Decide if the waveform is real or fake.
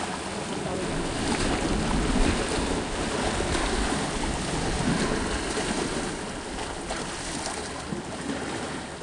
real